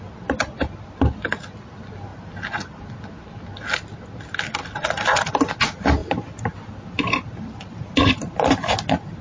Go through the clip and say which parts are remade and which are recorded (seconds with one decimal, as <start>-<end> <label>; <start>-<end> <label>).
0.0-2.1 recorded; 2.1-2.8 remade; 2.8-4.6 recorded; 4.6-5.5 remade; 5.5-9.2 recorded